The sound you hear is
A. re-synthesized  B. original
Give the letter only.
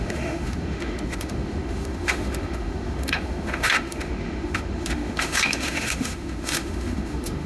A